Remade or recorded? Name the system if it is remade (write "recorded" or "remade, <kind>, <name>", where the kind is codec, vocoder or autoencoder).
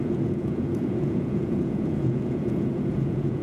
remade, vocoder, Vocos